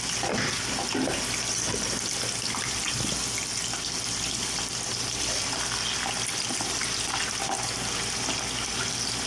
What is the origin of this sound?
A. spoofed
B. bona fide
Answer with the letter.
B